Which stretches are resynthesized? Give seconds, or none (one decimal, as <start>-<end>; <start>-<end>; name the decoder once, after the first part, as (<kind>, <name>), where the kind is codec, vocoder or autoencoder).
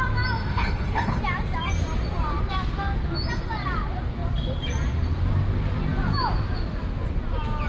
0.5-1.2 (codec, HILCodec)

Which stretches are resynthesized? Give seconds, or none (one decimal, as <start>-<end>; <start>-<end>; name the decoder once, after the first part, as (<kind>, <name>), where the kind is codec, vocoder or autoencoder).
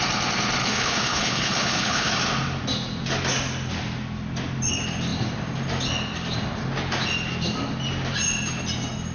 0.6-2.1 (codec, HILCodec)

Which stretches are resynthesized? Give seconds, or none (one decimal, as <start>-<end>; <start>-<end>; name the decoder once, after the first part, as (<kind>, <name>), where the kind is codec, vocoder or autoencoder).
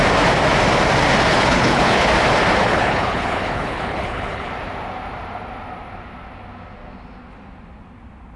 1.3-2.1 (codec, HILCodec); 2.6-4.5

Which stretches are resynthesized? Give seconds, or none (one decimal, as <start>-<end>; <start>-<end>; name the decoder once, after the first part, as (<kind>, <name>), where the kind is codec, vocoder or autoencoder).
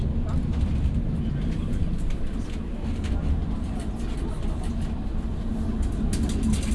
none